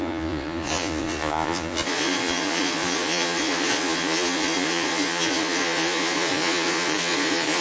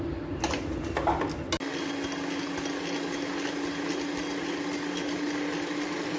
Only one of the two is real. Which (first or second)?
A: second